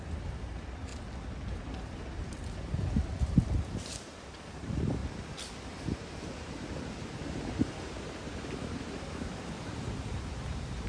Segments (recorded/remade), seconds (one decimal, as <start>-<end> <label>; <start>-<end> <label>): 0.0-0.9 remade; 0.9-2.7 recorded; 2.7-5.0 remade; 5.0-5.5 recorded; 5.5-10.9 remade